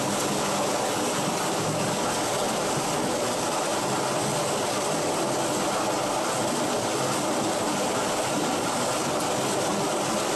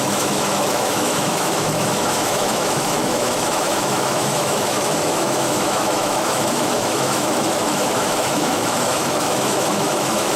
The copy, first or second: second